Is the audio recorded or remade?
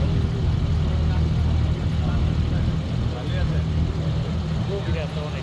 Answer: recorded